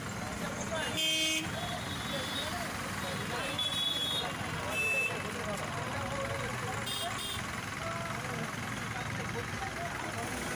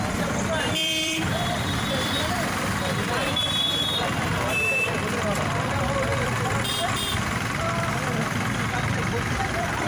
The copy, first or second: second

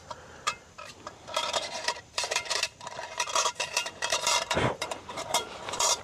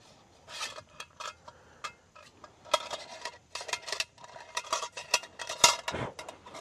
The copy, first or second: first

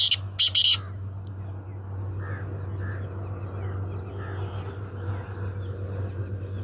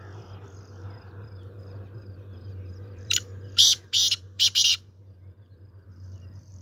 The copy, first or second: second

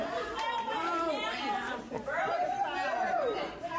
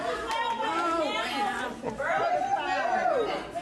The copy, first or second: first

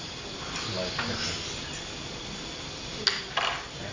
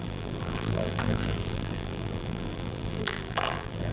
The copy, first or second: second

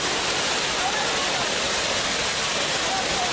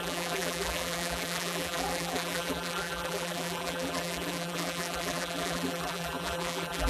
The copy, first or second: second